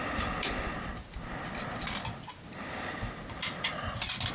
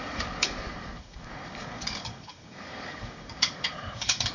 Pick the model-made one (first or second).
second